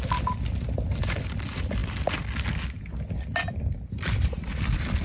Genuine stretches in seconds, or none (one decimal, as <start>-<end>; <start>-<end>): 1.8-4.6